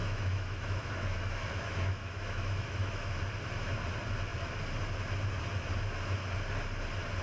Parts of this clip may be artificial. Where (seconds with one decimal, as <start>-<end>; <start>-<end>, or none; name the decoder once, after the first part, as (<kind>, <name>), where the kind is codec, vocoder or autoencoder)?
0.0-3.1 (autoencoder, DAC-VAE)